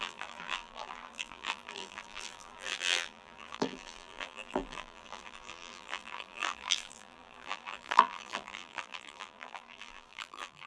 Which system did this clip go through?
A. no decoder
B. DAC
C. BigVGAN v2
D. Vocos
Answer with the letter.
C